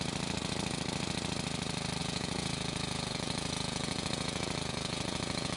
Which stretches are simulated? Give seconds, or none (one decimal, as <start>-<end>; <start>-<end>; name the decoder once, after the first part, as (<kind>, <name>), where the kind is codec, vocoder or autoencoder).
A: 2.0-5.6 (vocoder, Vocos)